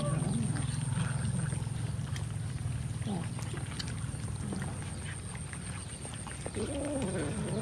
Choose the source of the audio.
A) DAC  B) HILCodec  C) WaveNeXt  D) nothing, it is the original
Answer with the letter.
D